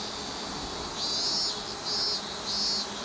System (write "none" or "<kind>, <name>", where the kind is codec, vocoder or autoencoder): none